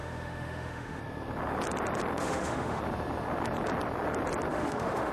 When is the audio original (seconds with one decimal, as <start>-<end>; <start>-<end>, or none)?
1.0-2.2; 2.8-4.5